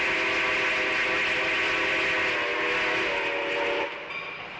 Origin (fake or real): real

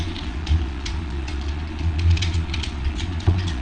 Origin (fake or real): fake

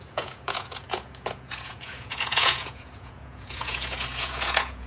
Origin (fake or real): fake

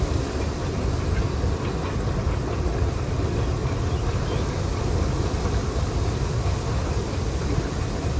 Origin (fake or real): real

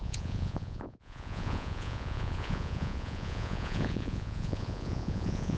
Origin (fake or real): fake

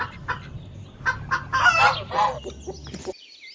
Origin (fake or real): real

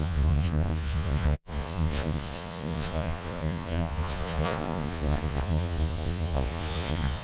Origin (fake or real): fake